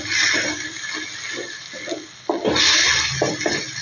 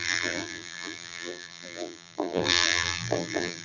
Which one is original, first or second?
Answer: first